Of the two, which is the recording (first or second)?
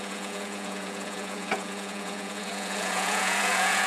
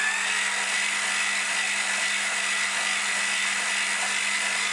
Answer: second